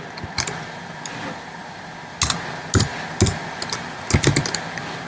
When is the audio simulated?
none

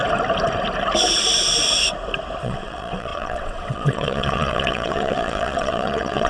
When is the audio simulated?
2.4-6.3 (vocoder, WaveNeXt)

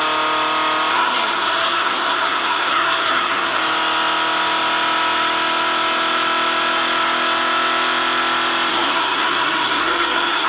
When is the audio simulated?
0.9-3.6 (codec, SNAC); 8.7-10.5

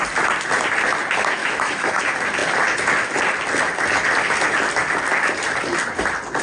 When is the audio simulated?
1.4-2.0 (autoencoder, DAC-VAE)

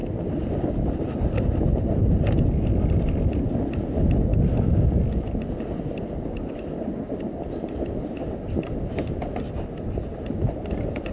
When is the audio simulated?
none

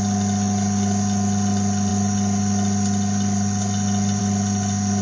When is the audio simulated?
none